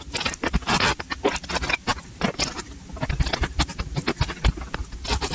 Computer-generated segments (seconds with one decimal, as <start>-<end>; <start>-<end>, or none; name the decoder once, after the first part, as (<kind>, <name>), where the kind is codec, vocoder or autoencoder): none